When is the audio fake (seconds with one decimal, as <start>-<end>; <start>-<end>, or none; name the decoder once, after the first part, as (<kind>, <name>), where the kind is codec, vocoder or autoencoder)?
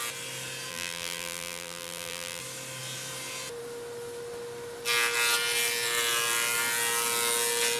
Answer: 0.7-2.4 (vocoder, BigVGAN v2)